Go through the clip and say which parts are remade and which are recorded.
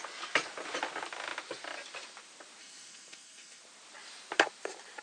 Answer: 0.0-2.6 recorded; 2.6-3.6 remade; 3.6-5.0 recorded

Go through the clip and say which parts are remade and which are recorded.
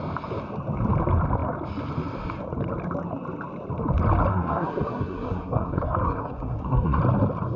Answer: 0.0-4.3 recorded; 4.3-7.0 remade; 7.0-7.6 recorded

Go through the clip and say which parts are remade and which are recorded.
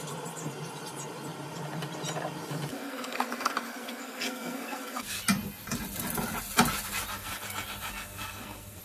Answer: 0.0-2.7 recorded; 2.7-5.2 remade; 5.2-7.2 recorded; 7.2-8.8 remade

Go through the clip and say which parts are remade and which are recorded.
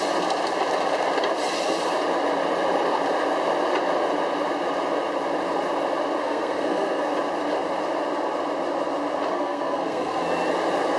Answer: 0.0-6.2 recorded; 6.2-7.1 remade; 7.1-9.3 recorded; 9.3-10.2 remade; 10.2-11.0 recorded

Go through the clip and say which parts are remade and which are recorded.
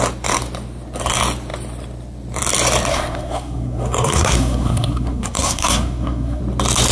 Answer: 0.0-2.9 recorded; 2.9-6.4 remade; 6.4-6.9 recorded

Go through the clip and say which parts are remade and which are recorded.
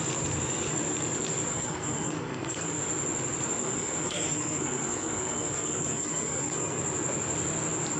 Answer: 0.0-1.5 recorded; 1.5-2.8 remade; 2.8-3.6 recorded; 3.6-6.8 remade; 6.8-8.0 recorded